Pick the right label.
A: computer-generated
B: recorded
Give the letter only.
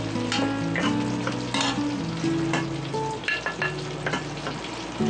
B